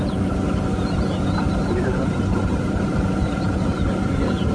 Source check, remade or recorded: recorded